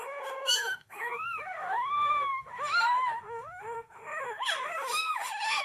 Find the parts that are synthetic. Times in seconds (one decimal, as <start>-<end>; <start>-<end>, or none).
0.0-5.6